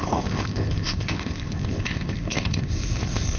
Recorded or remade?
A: remade